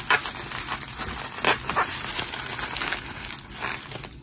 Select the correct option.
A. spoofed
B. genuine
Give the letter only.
B